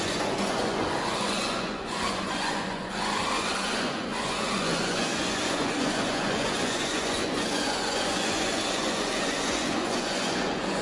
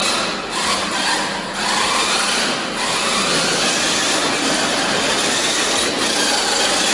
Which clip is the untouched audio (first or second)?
second